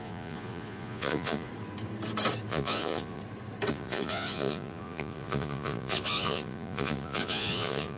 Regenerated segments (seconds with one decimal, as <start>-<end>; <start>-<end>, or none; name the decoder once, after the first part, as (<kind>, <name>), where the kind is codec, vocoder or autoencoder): 0.0-1.5 (vocoder, Vocos); 2.5-3.2; 3.7-8.0